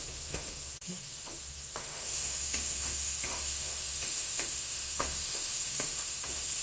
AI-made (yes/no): yes